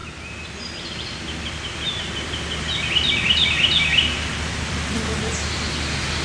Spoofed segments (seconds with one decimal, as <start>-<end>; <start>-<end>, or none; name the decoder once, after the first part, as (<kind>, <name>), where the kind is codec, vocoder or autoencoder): none